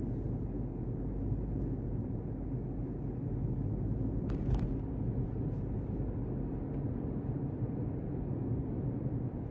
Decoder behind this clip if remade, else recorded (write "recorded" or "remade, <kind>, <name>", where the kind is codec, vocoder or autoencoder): recorded